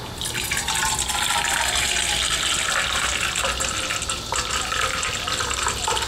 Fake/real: real